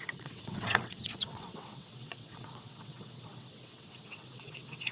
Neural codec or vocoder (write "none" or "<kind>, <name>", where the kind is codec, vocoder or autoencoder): vocoder, WaveNeXt